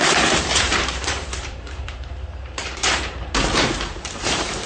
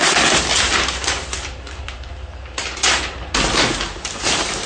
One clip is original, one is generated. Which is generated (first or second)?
first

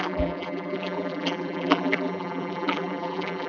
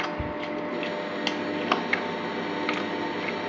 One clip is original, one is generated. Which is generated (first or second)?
first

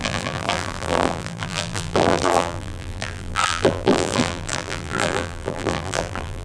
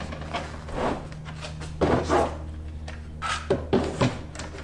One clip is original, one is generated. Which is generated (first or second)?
first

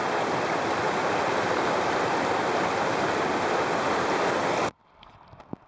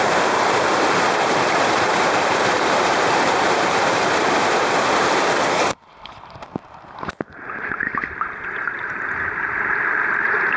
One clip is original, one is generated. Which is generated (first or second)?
second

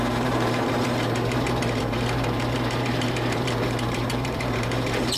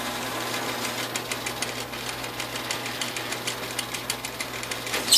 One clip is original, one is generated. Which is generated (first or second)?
first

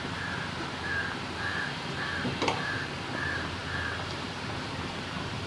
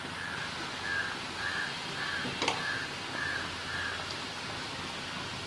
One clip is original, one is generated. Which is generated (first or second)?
first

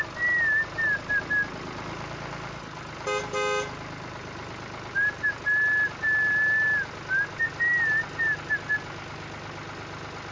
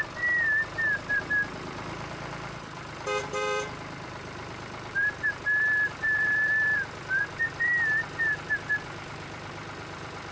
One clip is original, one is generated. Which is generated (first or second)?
second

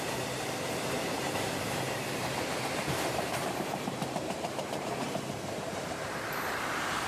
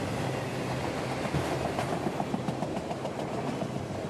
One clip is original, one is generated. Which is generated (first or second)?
first